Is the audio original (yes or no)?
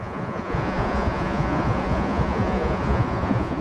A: no